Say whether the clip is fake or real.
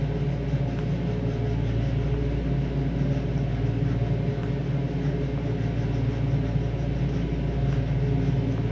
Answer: real